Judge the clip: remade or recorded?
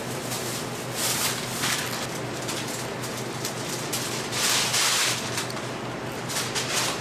recorded